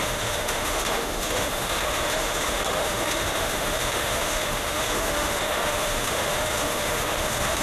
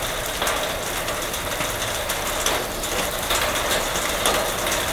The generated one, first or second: first